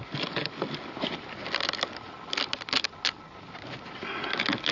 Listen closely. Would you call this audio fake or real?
real